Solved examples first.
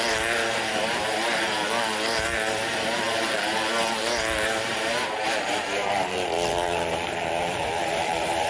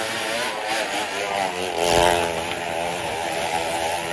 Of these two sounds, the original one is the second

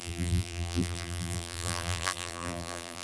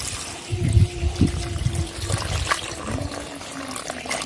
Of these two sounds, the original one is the second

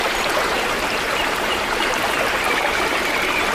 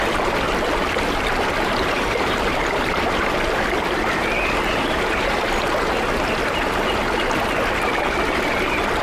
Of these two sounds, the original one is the second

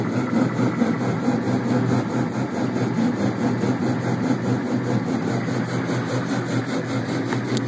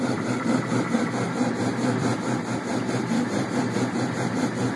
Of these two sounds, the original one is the first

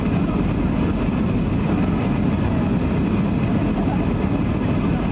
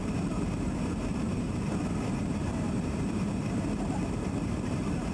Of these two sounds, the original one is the first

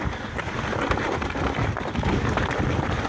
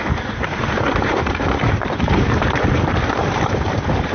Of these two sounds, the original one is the first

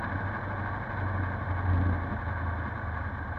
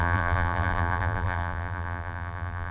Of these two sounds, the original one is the first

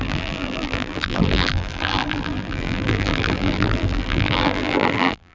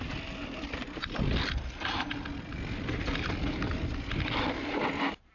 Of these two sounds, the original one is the second